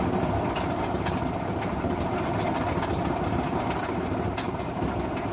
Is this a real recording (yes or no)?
yes